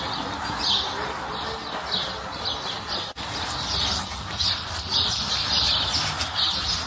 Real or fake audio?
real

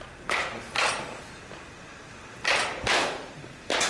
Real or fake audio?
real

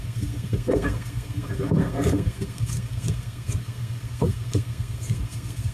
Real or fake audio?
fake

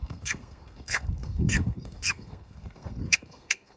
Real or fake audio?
fake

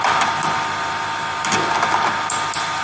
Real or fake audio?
real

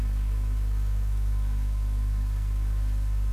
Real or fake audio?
fake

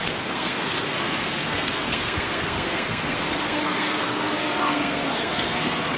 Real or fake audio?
fake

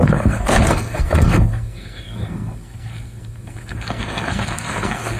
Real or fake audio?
fake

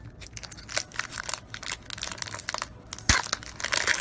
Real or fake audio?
real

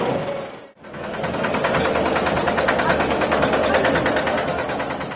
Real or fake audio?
real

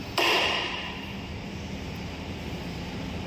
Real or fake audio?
real